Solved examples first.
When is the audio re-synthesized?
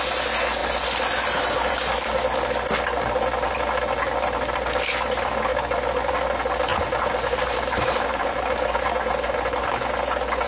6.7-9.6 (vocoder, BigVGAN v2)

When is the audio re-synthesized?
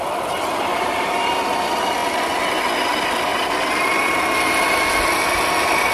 0.7-1.3 (vocoder, BigVGAN v2)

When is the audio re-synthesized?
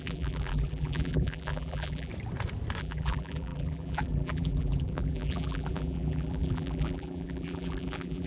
0.0-2.1 (vocoder, BigVGAN v2); 2.8-8.3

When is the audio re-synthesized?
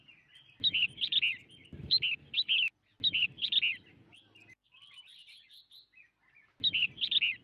none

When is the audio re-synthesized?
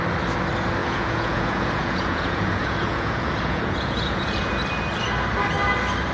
0.8-4.5 (vocoder, Vocos)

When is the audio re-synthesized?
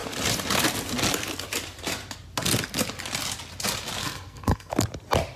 4.0-4.7 (codec, SNAC)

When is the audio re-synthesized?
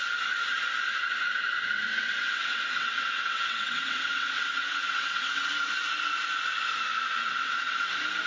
1.9-5.5 (vocoder, WaveNeXt); 7.2-7.7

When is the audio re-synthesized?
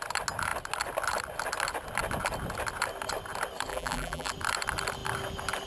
3.7-4.3 (vocoder, BigVGAN v2)